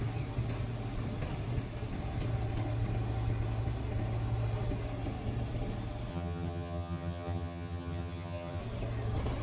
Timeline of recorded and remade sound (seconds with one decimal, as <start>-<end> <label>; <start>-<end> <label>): 0.0-6.1 recorded; 6.1-8.6 remade; 8.6-9.4 recorded